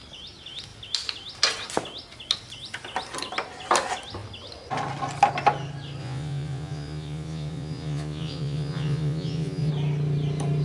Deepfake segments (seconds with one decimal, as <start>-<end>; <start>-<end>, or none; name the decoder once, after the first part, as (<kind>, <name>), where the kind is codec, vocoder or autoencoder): 6.0-9.7 (vocoder, Vocos)